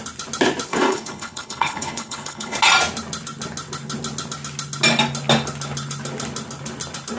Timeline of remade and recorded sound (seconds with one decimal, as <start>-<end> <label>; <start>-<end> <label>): 0.0-0.7 recorded; 0.7-2.6 remade; 2.6-7.2 recorded